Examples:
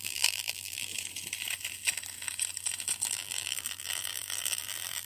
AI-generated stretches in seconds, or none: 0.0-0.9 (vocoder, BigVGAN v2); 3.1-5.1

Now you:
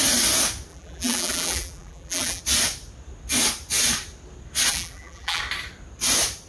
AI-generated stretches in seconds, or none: 0.7-2.4 (vocoder, BigVGAN v2); 4.7-5.4

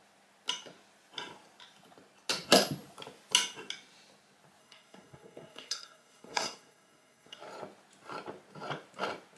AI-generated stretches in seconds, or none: 4.6-7.4 (codec, SNAC)